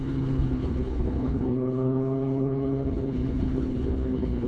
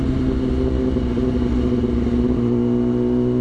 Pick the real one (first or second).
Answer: second